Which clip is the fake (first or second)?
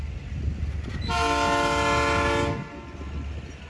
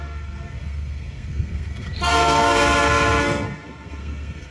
second